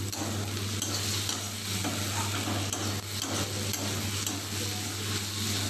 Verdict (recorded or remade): recorded